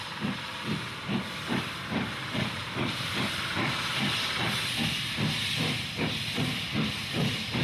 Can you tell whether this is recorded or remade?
recorded